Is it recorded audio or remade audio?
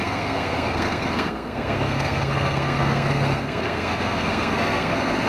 remade